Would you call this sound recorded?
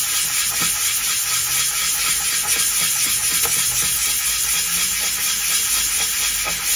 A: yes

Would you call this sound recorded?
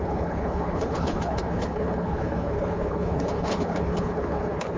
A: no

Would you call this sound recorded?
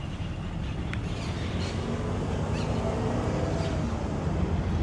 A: yes